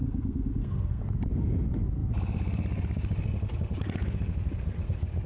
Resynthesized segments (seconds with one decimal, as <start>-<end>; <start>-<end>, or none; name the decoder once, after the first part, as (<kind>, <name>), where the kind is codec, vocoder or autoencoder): 0.0-1.0 (codec, SNAC)